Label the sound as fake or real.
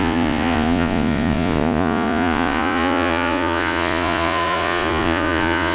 fake